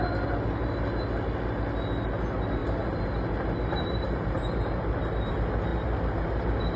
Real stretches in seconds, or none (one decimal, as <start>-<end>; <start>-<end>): 0.0-2.6; 5.3-5.7